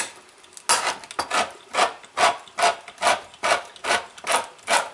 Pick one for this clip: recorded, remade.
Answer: recorded